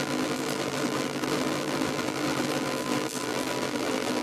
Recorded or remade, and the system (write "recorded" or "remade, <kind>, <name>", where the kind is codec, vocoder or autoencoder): remade, vocoder, BigVGAN v2